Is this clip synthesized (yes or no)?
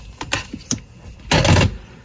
no